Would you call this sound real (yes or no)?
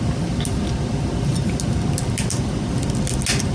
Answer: yes